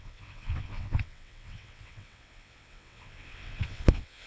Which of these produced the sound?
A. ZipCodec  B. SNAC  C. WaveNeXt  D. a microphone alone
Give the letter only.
C